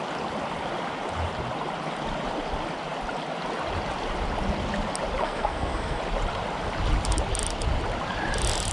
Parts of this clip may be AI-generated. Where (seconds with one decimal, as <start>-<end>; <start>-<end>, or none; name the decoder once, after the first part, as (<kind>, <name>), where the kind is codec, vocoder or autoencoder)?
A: 5.2-6.0 (codec, SNAC)